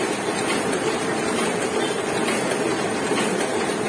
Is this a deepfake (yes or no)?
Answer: no